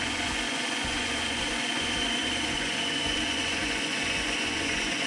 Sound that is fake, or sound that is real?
fake